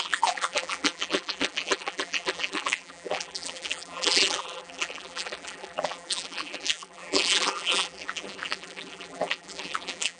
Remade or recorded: remade